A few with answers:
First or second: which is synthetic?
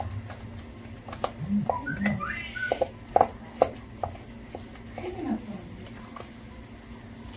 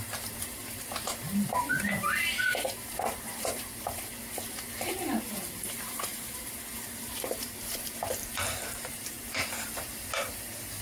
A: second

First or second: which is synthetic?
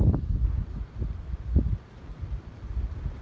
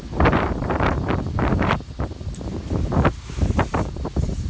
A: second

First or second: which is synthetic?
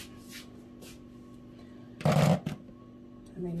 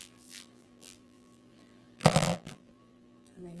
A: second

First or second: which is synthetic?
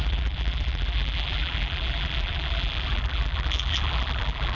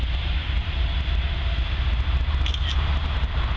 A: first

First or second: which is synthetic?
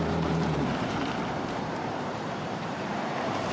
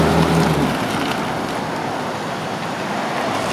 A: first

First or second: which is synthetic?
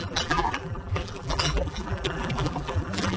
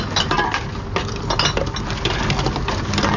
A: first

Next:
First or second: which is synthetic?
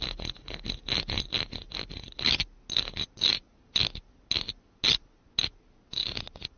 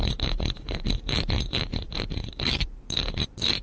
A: second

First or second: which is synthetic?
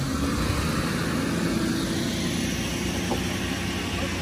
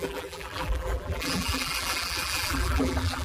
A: second